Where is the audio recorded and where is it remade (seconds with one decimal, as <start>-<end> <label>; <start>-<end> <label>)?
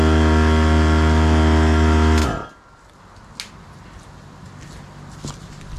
0.0-5.8 recorded